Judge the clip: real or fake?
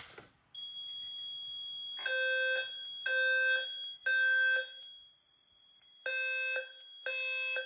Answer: real